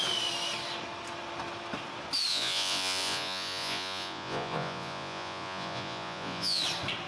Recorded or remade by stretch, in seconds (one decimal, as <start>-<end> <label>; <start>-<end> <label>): 0.0-2.3 recorded; 2.3-6.6 remade; 6.6-7.1 recorded